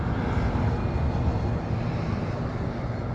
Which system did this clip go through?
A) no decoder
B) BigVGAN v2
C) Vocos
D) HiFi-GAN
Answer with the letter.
A